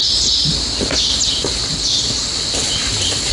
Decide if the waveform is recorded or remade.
recorded